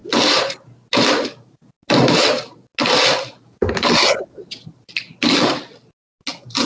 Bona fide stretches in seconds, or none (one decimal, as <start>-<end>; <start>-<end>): 0.0-6.7